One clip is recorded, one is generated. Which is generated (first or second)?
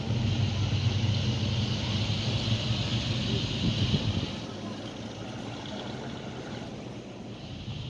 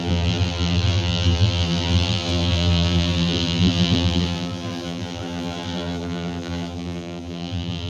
second